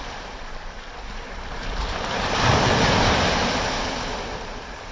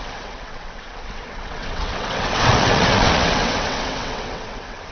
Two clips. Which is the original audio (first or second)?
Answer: first